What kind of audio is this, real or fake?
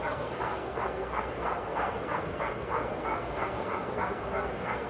fake